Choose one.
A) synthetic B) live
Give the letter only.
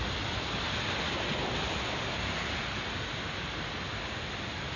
B